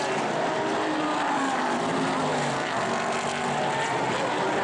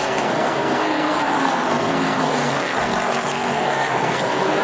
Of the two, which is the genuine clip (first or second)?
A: first